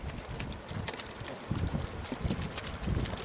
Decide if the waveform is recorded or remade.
remade